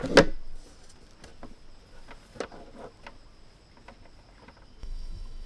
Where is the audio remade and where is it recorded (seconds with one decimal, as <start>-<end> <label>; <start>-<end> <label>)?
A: 0.0-4.8 recorded; 4.8-5.5 remade